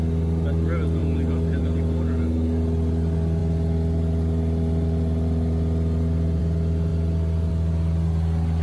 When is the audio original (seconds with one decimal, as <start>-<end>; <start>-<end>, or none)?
0.0-3.4; 6.4-6.9; 7.5-8.6

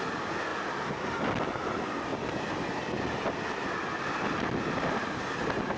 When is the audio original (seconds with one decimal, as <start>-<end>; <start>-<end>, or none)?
0.0-0.5; 1.7-2.1; 4.0-5.8

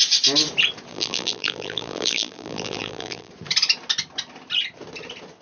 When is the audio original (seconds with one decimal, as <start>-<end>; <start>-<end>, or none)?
0.0-0.9; 3.3-5.4

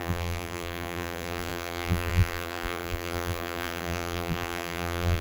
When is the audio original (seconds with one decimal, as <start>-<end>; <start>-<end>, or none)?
none